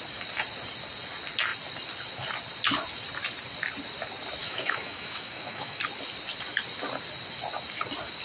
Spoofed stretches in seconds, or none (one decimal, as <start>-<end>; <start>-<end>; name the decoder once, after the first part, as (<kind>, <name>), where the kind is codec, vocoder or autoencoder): 4.4-5.8 (autoencoder, DAC-VAE)